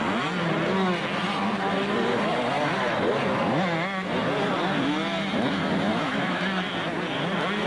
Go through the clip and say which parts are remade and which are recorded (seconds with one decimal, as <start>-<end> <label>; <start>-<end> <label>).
0.0-5.9 recorded; 5.9-6.4 remade; 6.4-7.7 recorded